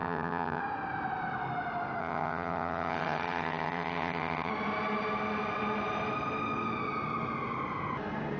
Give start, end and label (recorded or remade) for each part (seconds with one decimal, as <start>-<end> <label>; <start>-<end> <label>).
0.0-0.6 remade; 0.6-2.0 recorded; 2.0-4.5 remade; 4.5-8.4 recorded